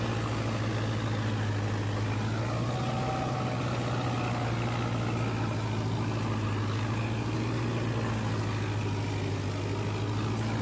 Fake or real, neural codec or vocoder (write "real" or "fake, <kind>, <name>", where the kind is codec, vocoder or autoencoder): real